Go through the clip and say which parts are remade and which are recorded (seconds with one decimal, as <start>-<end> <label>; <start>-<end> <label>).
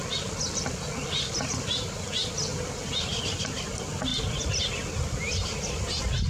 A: 0.0-6.3 recorded